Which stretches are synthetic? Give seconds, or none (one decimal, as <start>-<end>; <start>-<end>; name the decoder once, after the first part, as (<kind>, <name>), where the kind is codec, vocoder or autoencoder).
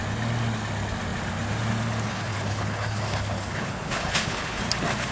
2.1-4.6 (codec, HILCodec)